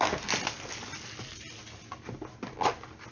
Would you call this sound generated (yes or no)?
no